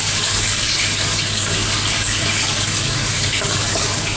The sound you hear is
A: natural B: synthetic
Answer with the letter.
B